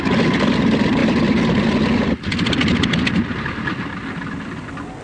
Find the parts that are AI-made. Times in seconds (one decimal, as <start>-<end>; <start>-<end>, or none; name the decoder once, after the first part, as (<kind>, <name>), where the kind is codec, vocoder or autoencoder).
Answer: none

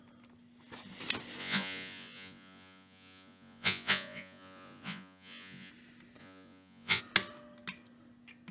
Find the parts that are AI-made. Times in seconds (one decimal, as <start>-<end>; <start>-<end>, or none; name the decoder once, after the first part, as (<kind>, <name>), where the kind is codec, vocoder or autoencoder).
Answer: 1.4-5.7 (vocoder, Vocos); 6.2-7.0

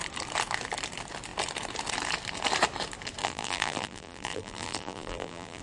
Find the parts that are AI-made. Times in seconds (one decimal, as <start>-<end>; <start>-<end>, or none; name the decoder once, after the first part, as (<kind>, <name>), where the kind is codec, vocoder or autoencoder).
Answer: 3.2-5.6 (vocoder, BigVGAN v2)

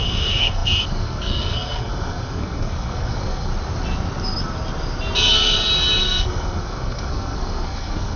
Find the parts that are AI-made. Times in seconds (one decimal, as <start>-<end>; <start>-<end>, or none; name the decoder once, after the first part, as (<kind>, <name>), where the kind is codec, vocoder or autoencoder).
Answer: 0.0-3.5 (codec, SNAC); 6.0-8.2

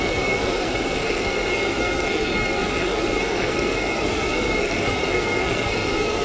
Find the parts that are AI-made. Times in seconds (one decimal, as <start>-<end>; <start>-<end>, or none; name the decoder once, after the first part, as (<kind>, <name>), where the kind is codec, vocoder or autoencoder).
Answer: 0.0-6.2 (codec, SNAC)

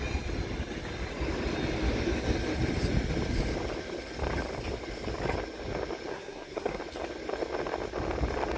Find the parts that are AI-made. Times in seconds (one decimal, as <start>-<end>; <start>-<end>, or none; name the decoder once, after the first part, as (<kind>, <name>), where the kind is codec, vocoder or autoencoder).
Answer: 6.1-6.8 (codec, SNAC)

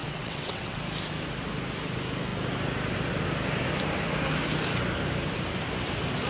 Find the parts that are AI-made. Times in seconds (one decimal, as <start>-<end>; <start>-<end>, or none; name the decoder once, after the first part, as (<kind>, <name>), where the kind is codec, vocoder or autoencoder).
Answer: 0.0-0.8 (vocoder, WaveNeXt)